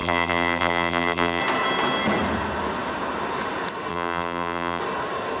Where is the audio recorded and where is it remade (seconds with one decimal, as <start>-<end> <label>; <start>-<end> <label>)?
0.0-1.4 remade; 1.4-3.9 recorded; 3.9-4.8 remade; 4.8-5.4 recorded